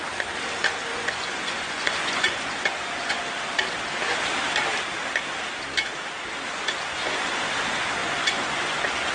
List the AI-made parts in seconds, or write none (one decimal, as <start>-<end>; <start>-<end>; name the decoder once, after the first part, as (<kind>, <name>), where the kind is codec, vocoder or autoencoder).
0.9-3.2 (vocoder, Vocos); 6.5-7.4; 8.0-9.1